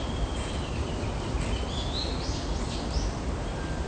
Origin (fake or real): real